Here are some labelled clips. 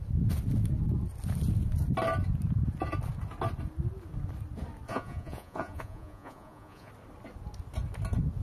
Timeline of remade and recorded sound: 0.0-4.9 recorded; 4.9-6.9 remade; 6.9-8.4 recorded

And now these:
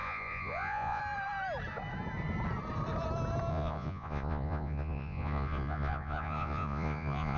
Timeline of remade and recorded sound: 0.0-1.0 remade; 1.0-3.5 recorded; 3.5-7.4 remade

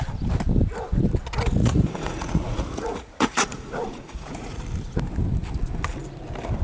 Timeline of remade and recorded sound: 0.0-1.6 recorded; 1.6-4.6 remade; 4.6-6.6 recorded

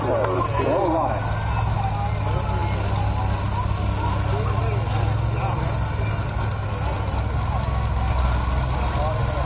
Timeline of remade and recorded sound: 0.0-9.5 recorded

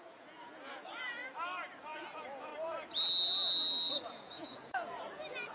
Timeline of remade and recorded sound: 0.0-1.2 remade; 1.2-1.8 recorded; 1.8-2.5 remade; 2.5-3.9 recorded; 3.9-5.5 remade

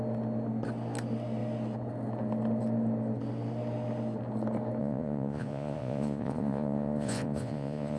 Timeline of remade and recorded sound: 0.0-4.8 recorded; 4.8-8.0 remade

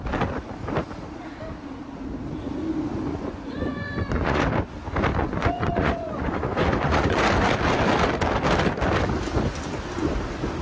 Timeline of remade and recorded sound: 0.0-2.9 recorded; 2.9-4.4 remade; 4.4-5.2 recorded; 5.2-7.2 remade; 7.2-10.6 recorded